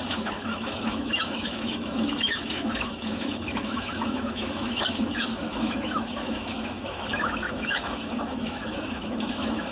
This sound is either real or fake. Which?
fake